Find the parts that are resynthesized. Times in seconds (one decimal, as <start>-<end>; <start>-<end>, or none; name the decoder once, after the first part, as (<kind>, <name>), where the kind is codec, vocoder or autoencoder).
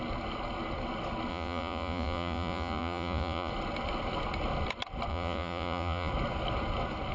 1.3-3.5 (vocoder, Vocos); 5.1-6.1